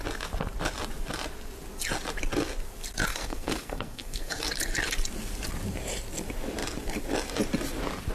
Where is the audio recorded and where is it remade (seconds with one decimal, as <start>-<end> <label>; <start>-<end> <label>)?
0.0-3.1 recorded; 3.1-4.4 remade; 4.4-8.1 recorded